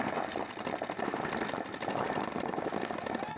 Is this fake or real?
real